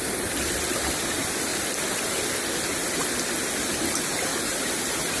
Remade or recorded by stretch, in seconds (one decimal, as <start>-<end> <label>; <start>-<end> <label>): 0.0-5.2 recorded